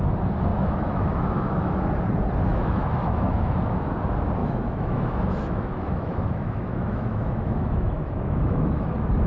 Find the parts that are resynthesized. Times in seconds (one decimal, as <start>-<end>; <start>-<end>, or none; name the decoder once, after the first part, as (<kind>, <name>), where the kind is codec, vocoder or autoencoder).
0.5-1.8 (autoencoder, DAC-VAE); 2.5-3.9; 4.4-8.9